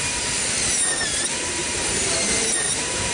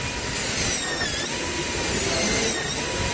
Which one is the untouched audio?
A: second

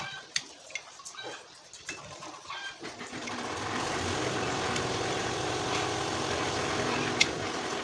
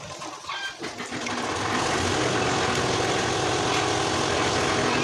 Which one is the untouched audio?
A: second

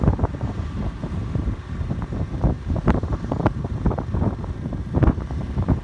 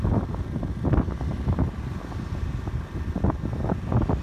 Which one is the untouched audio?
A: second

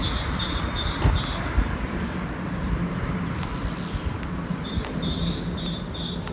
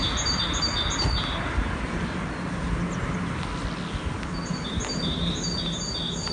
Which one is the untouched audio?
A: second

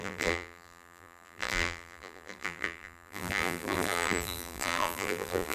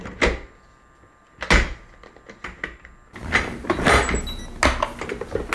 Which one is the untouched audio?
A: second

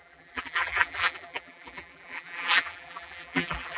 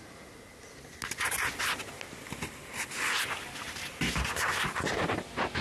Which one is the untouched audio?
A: second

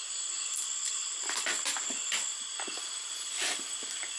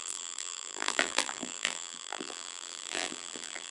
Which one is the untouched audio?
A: first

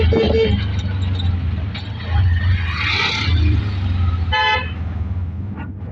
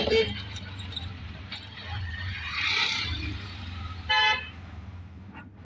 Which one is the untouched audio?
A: first